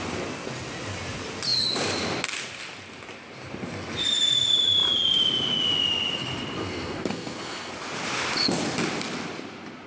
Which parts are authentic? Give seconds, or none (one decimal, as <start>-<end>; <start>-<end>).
0.0-6.6; 7.7-9.9